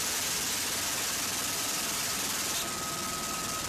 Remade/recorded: recorded